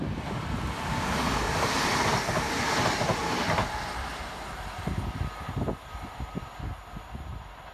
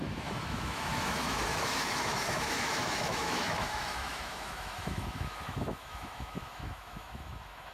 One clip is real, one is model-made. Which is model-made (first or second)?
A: second